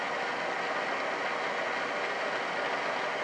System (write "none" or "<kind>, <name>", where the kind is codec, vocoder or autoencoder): none